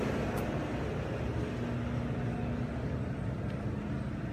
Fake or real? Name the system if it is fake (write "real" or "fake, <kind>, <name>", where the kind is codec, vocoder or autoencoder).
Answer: real